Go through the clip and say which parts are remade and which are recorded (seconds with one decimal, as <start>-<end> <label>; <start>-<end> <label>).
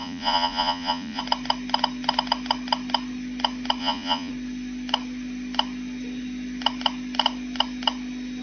0.0-1.2 remade; 1.2-3.8 recorded; 3.8-4.3 remade; 4.3-8.4 recorded